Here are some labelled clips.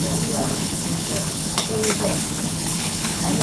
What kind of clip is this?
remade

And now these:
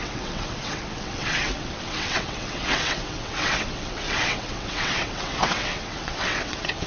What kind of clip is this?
remade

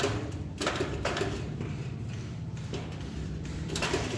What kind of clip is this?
remade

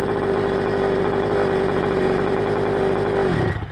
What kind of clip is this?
recorded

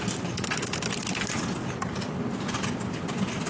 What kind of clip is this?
recorded